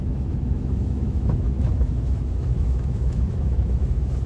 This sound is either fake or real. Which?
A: fake